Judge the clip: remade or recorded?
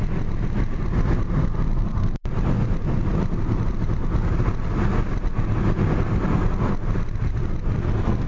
recorded